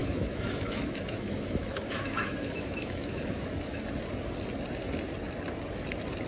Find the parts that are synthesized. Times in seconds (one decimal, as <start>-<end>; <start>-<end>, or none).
0.0-3.8